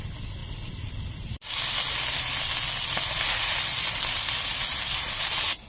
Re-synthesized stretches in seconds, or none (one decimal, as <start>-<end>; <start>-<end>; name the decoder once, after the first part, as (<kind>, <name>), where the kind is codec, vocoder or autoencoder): none